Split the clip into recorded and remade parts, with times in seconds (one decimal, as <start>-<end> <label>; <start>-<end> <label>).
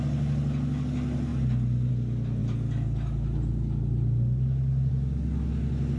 0.0-6.0 recorded